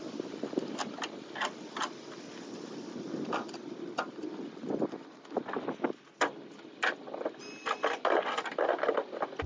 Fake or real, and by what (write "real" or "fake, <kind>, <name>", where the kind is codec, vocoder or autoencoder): real